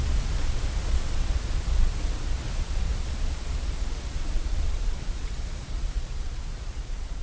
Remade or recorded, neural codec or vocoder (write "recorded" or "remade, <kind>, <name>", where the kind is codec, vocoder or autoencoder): remade, vocoder, Vocos